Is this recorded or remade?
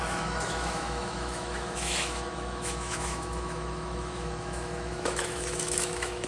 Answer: remade